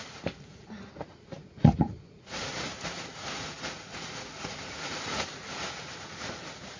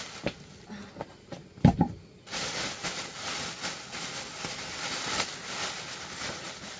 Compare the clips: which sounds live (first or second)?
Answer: second